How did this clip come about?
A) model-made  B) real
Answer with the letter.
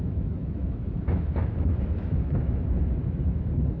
A